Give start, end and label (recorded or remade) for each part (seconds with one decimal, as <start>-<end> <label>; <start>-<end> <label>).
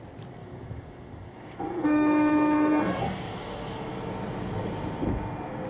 0.0-0.4 recorded; 0.4-2.7 remade; 2.7-3.4 recorded; 3.4-4.1 remade; 4.1-5.7 recorded